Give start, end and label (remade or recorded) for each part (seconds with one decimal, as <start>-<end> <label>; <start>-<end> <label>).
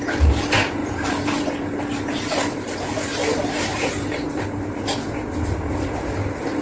0.0-6.6 recorded